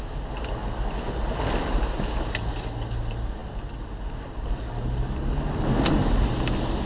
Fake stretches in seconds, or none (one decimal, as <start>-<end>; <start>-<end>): none